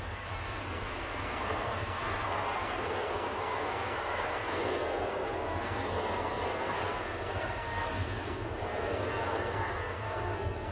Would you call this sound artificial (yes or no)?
yes